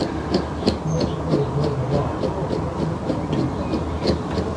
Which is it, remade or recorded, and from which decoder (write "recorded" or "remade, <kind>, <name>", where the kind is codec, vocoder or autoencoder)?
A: recorded